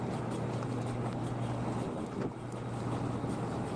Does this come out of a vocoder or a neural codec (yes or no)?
no